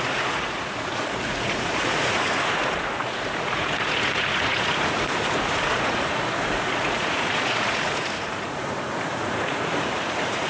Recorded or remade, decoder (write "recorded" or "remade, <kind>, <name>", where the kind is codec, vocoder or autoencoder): remade, vocoder, Vocos